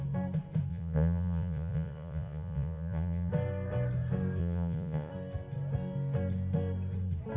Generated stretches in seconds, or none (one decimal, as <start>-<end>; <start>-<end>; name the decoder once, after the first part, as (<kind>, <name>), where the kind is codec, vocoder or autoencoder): 0.7-3.3 (vocoder, Vocos); 4.4-5.1

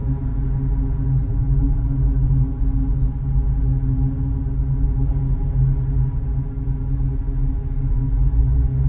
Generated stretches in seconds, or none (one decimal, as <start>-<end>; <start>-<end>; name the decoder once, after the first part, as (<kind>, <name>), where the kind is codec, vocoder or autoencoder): none

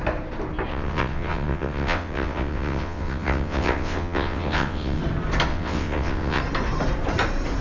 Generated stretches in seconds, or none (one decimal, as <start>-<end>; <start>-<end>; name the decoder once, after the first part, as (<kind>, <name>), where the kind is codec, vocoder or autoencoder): 0.7-5.0 (vocoder, WaveNeXt); 5.5-6.4

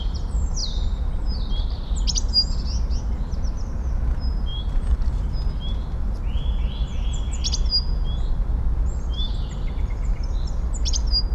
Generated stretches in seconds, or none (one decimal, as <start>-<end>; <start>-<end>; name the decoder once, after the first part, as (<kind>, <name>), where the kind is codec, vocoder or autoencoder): 4.5-5.2 (vocoder, BigVGAN v2)

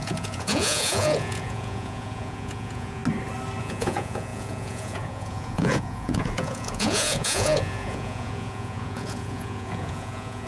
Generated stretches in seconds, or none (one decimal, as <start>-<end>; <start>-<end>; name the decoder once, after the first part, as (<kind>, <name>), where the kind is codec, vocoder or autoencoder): 0.0-3.0 (vocoder, Vocos); 3.6-10.5